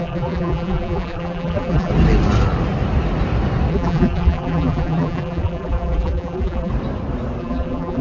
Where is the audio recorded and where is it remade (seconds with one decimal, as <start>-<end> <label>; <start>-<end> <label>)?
0.0-1.9 remade; 1.9-3.7 recorded; 3.7-6.7 remade; 6.7-7.4 recorded; 7.4-8.0 remade